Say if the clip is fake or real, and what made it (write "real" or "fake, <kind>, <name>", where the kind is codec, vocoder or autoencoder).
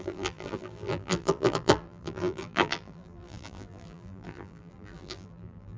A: fake, vocoder, BigVGAN v2